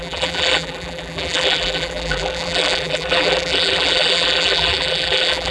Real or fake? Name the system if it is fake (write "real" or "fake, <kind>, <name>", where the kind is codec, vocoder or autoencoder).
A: fake, vocoder, BigVGAN v2